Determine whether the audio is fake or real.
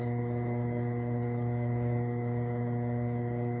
fake